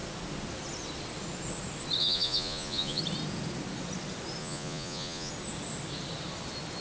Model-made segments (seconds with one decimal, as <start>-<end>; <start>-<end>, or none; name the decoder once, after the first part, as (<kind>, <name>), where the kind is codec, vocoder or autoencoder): 2.0-3.0 (vocoder, Vocos); 4.4-5.3